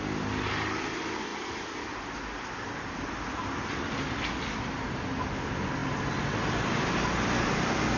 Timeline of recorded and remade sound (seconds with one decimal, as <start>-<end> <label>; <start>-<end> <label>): 0.0-8.0 recorded